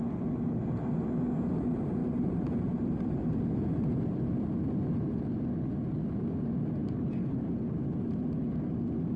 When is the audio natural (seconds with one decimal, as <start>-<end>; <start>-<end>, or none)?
0.0-2.0; 3.2-6.8; 7.5-9.2